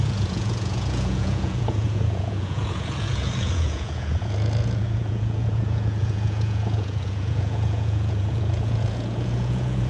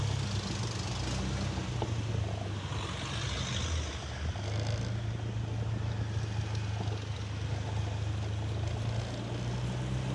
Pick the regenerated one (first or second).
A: first